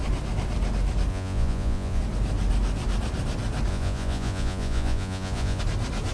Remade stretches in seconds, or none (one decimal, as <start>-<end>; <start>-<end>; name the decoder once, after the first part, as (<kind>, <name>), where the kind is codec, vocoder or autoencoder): 1.1-2.0 (vocoder, Vocos); 3.7-5.6